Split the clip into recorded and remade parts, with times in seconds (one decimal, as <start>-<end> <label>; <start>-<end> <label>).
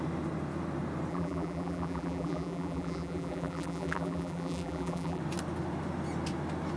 0.0-1.1 recorded; 1.1-5.2 remade; 5.2-6.8 recorded